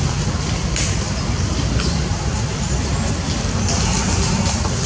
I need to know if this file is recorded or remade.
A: recorded